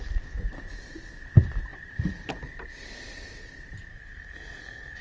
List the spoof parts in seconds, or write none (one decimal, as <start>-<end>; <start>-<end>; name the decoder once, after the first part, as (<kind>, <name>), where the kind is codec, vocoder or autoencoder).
3.9-5.0 (codec, SNAC)